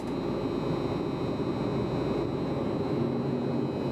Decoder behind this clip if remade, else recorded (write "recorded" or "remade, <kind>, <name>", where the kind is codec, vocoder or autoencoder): recorded